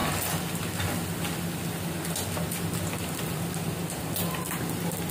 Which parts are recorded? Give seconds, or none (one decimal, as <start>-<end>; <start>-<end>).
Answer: 0.0-5.1